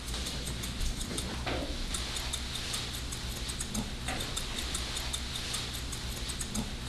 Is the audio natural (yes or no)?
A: yes